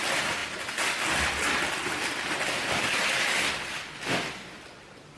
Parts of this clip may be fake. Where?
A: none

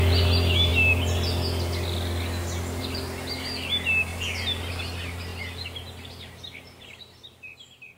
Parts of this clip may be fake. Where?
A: none

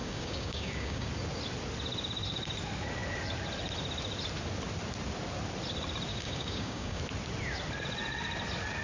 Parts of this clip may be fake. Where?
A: 0.0-1.1 (codec, DAC); 6.1-7.0

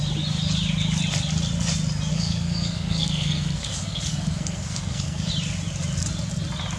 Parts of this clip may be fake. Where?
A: 2.1-5.3 (codec, SNAC)

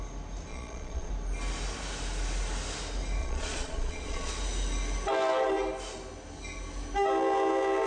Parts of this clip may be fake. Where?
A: 0.5-1.1 (vocoder, Vocos); 3.2-4.3

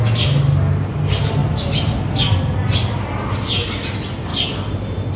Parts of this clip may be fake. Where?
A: none

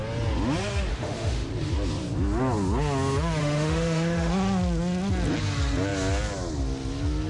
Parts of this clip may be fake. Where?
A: 0.9-1.5 (autoencoder, DAC-VAE); 3.4-4.3

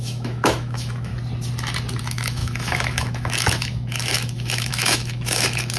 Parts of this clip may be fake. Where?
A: 0.0-1.1 (autoencoder, DAC-VAE); 2.0-5.8